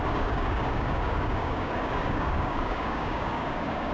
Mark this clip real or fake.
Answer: fake